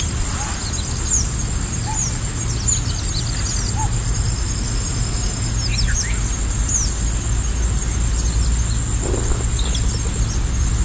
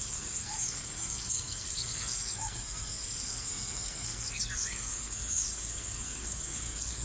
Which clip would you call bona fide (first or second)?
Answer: first